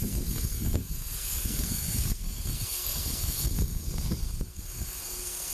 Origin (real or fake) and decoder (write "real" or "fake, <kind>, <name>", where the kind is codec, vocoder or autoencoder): fake, codec, SNAC